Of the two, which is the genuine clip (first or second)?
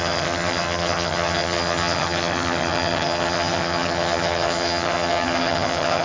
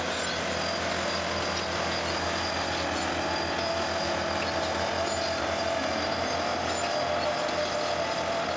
second